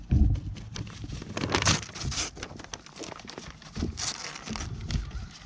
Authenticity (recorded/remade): recorded